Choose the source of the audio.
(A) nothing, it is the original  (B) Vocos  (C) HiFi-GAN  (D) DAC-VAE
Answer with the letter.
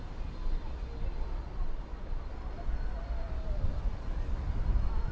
A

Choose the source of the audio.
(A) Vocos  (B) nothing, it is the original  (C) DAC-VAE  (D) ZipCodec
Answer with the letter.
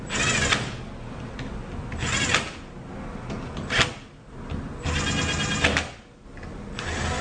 B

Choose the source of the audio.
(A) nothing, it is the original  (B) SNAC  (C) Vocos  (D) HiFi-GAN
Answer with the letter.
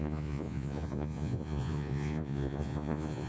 C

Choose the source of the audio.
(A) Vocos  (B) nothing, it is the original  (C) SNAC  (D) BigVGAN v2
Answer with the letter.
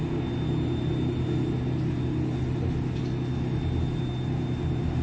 B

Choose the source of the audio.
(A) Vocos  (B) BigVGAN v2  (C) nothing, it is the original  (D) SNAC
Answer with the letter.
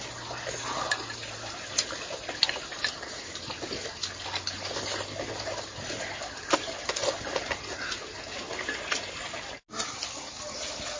C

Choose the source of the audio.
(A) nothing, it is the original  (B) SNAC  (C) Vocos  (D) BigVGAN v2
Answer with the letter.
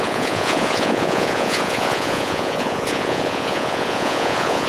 C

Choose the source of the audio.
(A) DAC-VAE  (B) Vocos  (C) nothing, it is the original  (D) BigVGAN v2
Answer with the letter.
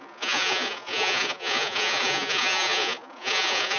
B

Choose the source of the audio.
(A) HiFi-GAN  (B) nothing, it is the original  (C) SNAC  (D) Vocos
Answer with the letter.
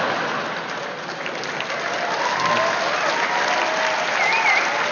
B